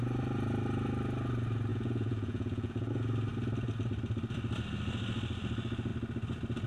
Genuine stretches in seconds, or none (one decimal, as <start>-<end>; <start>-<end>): 0.0-1.7; 2.9-6.7